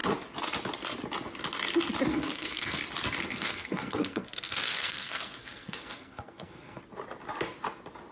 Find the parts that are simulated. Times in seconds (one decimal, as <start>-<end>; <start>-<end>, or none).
2.1-2.8; 3.2-6.8

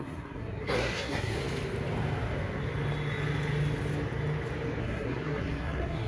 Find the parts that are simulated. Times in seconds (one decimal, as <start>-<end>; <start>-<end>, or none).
0.0-1.4; 4.8-6.1

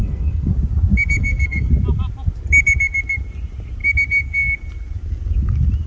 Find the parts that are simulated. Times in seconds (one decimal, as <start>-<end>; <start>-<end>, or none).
0.0-0.5; 1.2-1.7

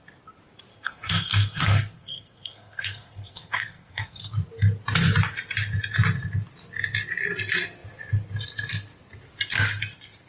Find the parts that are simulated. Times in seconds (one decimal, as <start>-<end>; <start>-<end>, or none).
0.7-4.2

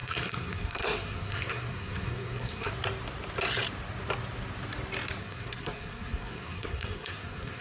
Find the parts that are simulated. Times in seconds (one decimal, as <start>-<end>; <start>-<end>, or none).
0.0-2.7; 5.2-7.6

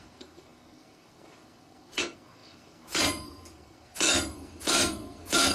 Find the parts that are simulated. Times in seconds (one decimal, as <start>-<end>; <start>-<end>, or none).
0.0-5.5